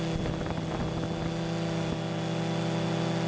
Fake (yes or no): no